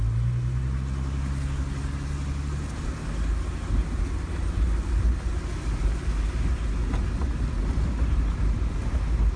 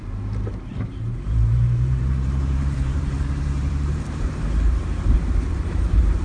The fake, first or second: second